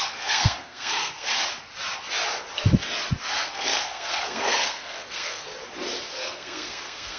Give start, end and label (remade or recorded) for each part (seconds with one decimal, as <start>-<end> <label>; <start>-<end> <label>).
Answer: 0.0-1.3 remade; 1.3-3.2 recorded; 3.2-5.5 remade; 5.5-6.1 recorded; 6.1-7.2 remade